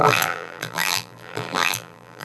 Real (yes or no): no